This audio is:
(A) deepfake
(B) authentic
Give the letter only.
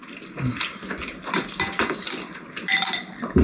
B